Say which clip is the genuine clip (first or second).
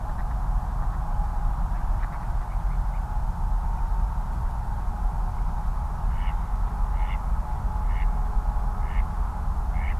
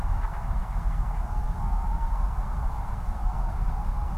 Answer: first